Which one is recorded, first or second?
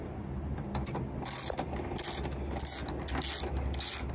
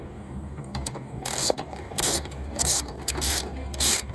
first